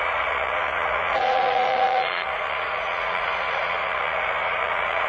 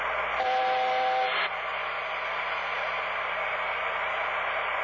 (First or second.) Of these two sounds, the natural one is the second